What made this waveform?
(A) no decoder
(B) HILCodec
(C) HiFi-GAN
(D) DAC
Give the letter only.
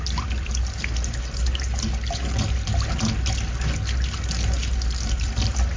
A